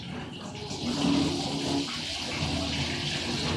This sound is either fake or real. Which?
real